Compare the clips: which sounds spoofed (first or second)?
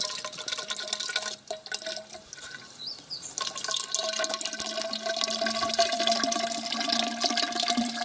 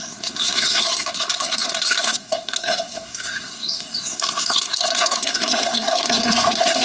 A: second